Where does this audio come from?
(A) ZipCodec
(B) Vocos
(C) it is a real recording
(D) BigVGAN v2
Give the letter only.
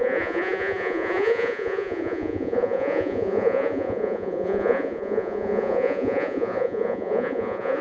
B